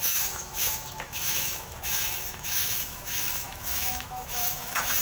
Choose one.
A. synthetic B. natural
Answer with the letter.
A